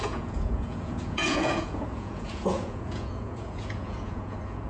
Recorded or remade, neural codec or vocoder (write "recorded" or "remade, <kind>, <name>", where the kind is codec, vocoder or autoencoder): remade, vocoder, Vocos